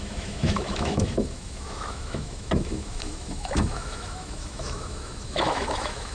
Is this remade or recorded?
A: remade